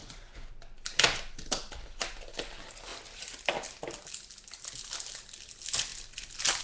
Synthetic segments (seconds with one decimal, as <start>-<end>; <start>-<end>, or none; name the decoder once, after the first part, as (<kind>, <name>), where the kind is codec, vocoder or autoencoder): 0.0-0.5 (vocoder, Vocos)